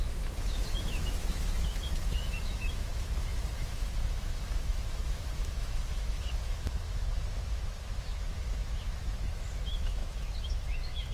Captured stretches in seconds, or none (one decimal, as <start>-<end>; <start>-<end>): none